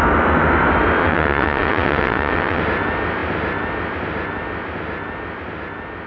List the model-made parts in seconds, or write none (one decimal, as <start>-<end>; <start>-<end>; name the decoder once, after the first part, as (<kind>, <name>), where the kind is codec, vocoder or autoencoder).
1.0-2.6 (vocoder, WaveNeXt)